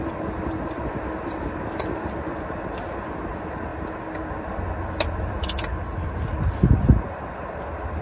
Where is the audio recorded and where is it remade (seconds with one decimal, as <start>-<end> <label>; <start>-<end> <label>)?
0.0-8.0 recorded